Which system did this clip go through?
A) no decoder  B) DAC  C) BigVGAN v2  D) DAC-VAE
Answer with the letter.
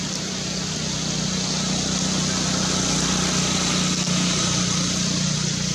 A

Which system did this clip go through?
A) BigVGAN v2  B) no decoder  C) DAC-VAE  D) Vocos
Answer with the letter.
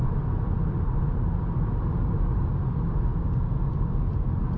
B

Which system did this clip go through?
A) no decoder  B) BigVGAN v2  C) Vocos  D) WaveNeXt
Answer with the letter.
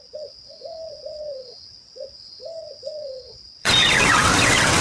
D